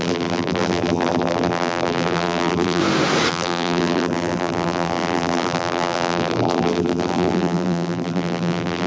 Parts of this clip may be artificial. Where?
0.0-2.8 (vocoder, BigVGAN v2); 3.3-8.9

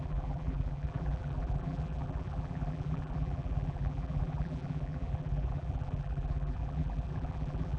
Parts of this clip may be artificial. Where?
0.0-7.8 (vocoder, BigVGAN v2)

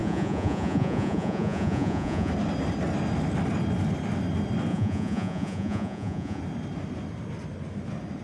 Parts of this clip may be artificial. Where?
0.0-2.3 (vocoder, Vocos); 4.7-6.4

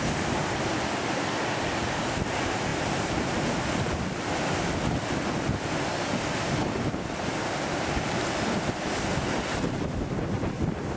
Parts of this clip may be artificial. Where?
none

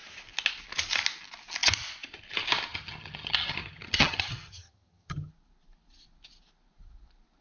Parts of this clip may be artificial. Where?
2.7-5.3 (vocoder, HiFi-GAN)

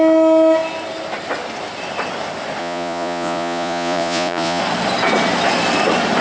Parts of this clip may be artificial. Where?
2.6-4.6 (vocoder, Vocos)

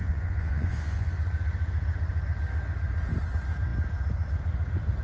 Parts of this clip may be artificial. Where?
0.0-1.1 (vocoder, Vocos)

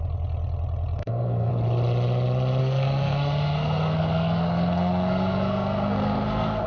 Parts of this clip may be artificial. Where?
1.0-1.5 (codec, SNAC); 2.6-6.7